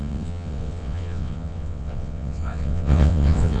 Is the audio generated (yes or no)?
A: yes